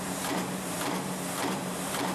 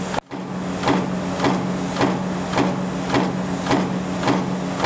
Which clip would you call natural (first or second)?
second